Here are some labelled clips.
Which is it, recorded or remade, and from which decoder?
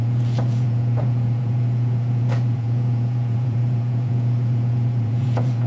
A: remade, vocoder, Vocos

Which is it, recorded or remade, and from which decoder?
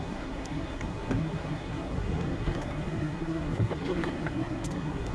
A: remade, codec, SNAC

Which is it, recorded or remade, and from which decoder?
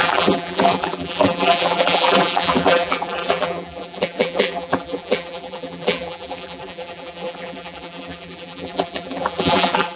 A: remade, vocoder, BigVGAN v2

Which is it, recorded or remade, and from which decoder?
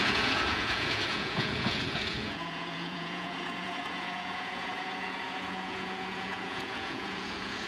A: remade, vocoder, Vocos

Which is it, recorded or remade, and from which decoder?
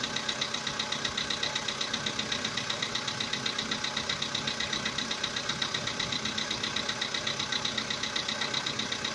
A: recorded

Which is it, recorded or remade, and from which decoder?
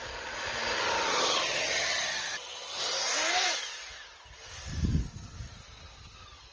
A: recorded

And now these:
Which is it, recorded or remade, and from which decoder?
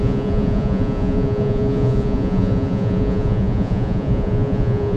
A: remade, vocoder, Vocos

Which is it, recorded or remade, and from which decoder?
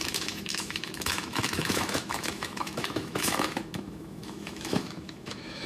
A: remade, autoencoder, DAC-VAE